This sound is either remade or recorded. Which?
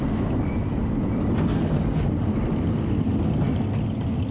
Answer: recorded